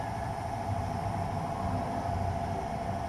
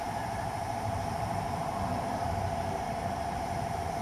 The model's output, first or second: second